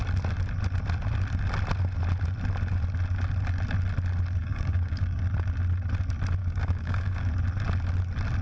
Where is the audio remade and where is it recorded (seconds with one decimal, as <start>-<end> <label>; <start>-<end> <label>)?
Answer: 0.0-4.4 recorded; 4.4-5.2 remade; 5.2-6.4 recorded; 6.4-7.3 remade; 7.3-8.4 recorded